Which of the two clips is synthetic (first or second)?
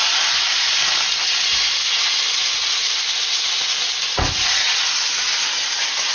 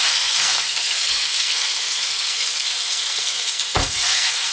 second